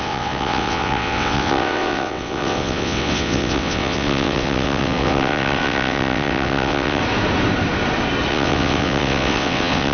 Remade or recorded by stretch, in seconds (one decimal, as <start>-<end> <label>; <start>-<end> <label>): 0.0-7.0 remade; 7.0-8.3 recorded; 8.3-9.9 remade